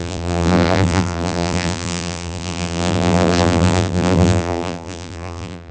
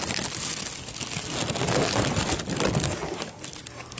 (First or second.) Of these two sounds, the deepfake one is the first